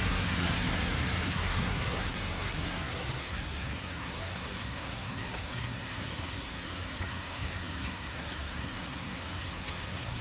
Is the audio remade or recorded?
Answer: remade